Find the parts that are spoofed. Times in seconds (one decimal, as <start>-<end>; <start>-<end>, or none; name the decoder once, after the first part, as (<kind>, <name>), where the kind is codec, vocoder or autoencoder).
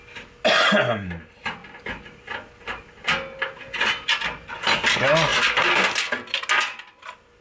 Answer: none